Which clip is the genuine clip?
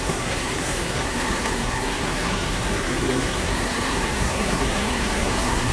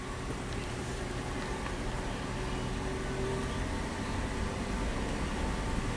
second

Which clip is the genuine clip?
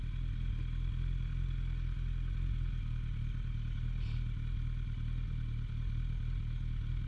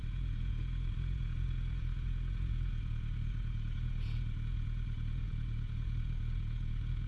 first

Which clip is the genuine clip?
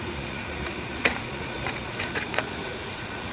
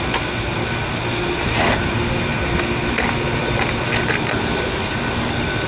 second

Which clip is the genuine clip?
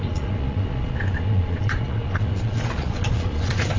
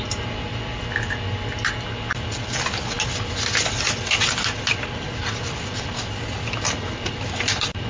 second